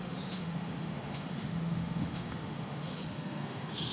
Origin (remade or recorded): remade